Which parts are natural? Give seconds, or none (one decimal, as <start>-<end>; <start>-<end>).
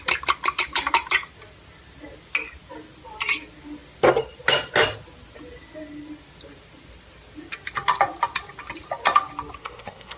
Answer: 0.0-9.6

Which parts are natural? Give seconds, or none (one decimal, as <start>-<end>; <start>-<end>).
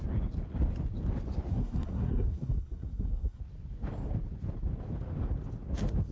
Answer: 0.0-1.5; 3.4-6.1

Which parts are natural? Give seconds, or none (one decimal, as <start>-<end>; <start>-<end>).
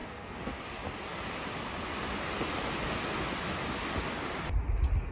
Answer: 0.6-5.1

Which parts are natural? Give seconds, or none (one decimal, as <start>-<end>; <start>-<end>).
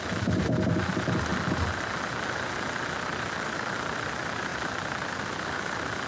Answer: 0.0-6.1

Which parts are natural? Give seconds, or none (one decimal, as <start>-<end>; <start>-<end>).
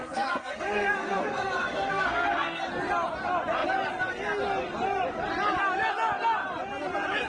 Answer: 2.6-7.3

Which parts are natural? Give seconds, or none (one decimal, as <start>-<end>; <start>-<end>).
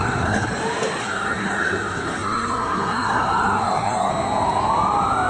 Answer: 0.5-1.0; 4.1-5.3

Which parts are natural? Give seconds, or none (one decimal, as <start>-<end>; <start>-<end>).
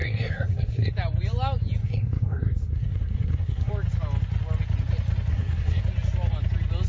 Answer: 0.9-1.8; 3.7-5.3; 5.8-6.9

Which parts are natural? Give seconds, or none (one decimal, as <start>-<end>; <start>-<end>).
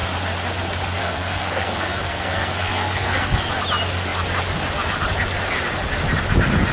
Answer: 0.0-1.0; 3.5-6.7